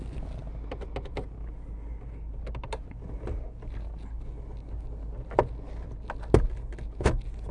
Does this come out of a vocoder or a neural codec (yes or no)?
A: no